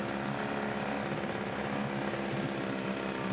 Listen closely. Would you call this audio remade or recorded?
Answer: recorded